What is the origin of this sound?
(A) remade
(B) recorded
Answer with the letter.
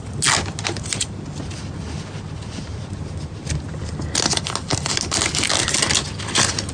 B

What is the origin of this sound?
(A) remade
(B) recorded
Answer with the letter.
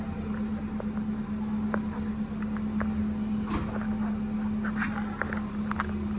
B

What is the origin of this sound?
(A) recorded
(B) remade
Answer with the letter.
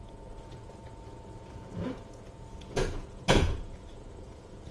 B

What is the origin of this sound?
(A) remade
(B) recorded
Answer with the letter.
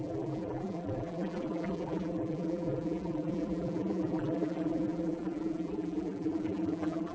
A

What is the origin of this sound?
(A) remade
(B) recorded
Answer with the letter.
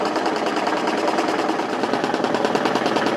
A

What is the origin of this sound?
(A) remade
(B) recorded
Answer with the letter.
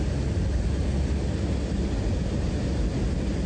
B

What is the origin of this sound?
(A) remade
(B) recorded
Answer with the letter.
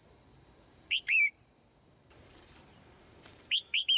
A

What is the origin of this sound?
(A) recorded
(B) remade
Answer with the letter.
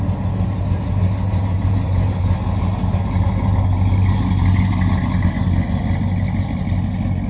A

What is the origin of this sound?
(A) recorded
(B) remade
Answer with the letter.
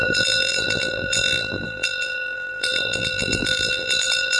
B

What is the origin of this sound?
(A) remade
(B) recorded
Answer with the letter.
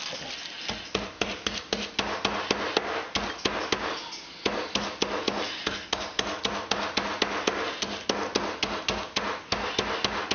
B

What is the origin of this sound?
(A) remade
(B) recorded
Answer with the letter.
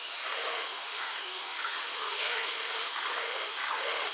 A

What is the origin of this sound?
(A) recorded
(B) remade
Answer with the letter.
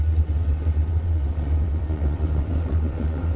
B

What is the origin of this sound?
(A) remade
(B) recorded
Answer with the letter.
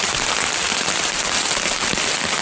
B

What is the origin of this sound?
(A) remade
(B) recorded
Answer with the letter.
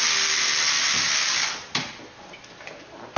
B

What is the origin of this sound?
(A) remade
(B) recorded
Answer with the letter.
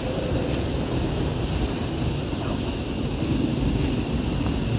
B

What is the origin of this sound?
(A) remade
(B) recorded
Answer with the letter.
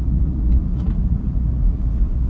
A